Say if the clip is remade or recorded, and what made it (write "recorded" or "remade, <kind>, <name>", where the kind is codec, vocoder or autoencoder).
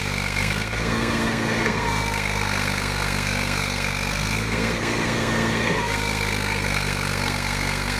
remade, codec, SNAC